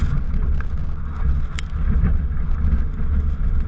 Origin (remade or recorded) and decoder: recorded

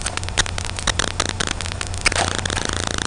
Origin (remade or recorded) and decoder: recorded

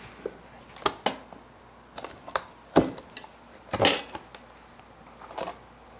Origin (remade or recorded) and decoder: recorded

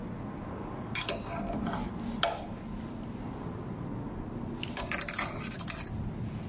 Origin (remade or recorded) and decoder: recorded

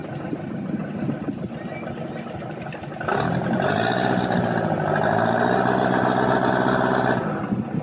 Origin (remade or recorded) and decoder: recorded